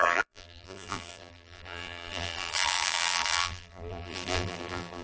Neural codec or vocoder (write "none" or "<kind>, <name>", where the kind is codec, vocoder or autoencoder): vocoder, BigVGAN v2